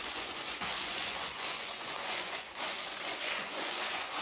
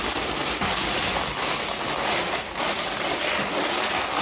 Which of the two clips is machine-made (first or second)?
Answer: first